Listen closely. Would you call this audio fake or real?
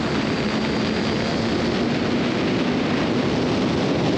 real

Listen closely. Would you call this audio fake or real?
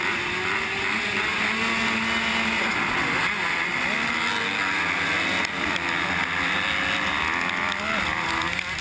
real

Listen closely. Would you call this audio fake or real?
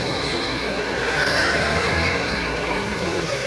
fake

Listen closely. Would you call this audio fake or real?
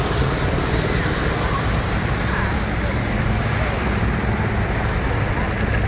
real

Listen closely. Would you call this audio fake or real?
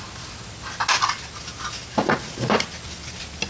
real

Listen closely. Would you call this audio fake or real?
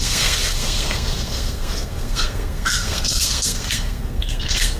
fake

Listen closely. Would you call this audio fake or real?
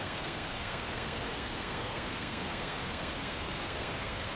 fake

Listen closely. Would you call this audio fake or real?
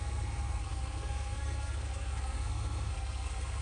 fake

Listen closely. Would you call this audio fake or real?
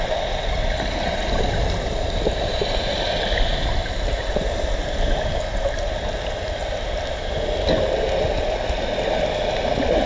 real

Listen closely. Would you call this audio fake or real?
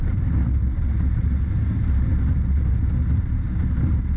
real